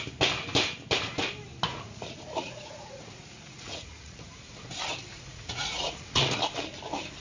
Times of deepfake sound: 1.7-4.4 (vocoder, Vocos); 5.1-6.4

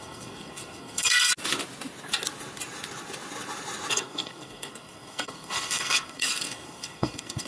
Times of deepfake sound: 0.0-1.3 (codec, SNAC); 3.9-7.5

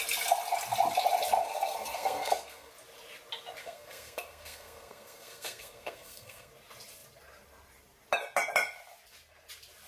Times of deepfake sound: 1.4-2.7 (codec, SNAC); 3.6-6.5

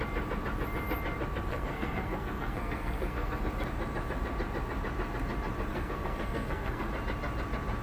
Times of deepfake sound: 1.5-3.4 (codec, SNAC); 5.7-6.9

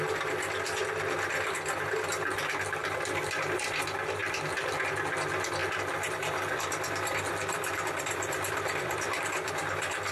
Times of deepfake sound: 2.8-3.6 (vocoder, BigVGAN v2); 5.6-9.5

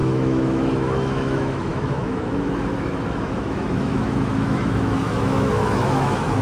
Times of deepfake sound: 0.0-6.4 (autoencoder, DAC-VAE)